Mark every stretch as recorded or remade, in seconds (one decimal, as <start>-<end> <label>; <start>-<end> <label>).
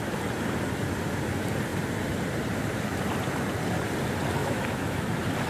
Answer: 0.0-4.4 recorded; 4.4-5.1 remade; 5.1-5.5 recorded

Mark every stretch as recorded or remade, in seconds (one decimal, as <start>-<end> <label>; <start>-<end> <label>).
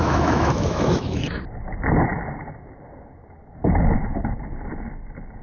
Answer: 0.0-1.4 remade; 1.4-5.4 recorded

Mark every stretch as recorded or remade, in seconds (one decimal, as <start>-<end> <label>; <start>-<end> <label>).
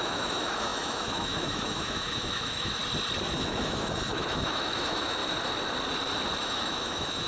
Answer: 0.0-2.8 remade; 2.8-3.3 recorded; 3.3-5.2 remade; 5.2-6.4 recorded; 6.4-7.3 remade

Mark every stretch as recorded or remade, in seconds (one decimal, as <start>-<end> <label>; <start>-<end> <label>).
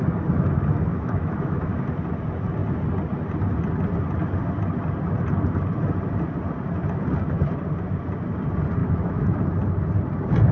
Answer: 0.0-0.9 recorded; 0.9-1.9 remade; 1.9-8.8 recorded; 8.8-9.4 remade; 9.4-10.5 recorded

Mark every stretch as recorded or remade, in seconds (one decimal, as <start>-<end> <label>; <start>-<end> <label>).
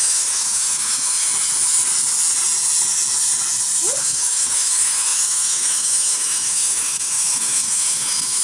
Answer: 0.0-1.3 remade; 1.3-4.0 recorded; 4.0-8.4 remade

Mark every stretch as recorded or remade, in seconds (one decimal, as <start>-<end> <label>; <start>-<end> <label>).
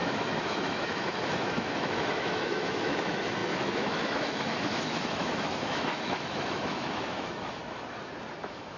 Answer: 0.0-7.6 remade; 7.6-8.4 recorded; 8.4-8.8 remade